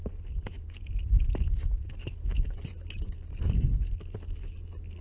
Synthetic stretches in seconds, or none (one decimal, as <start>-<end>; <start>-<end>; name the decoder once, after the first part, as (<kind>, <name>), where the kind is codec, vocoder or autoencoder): 0.4-3.4 (vocoder, BigVGAN v2)